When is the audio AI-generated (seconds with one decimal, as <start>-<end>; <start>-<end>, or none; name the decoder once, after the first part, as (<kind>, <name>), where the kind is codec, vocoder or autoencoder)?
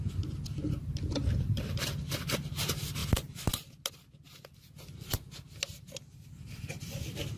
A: none